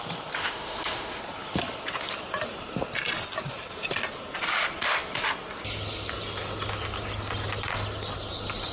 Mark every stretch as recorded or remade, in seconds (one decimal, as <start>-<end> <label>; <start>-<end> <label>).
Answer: 0.0-0.4 recorded; 0.4-1.2 remade; 1.2-8.7 recorded